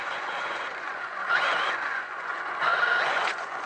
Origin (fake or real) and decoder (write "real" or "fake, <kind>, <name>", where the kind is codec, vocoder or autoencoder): fake, vocoder, Vocos